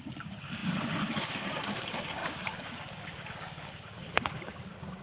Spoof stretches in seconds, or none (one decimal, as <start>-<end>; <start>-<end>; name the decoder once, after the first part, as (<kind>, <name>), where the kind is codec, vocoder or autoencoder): 0.0-5.0 (codec, DAC)